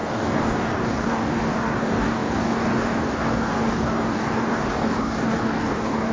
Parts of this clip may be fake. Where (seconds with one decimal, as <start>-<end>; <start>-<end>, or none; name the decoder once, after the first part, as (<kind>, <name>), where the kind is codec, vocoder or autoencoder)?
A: 0.0-6.1 (codec, DAC)